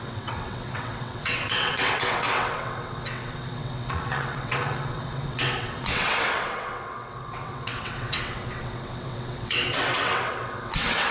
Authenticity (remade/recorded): remade